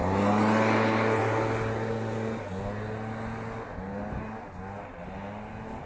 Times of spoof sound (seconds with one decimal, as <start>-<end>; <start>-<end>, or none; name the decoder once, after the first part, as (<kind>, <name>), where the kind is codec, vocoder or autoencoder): none